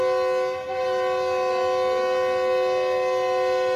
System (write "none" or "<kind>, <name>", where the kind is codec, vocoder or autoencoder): none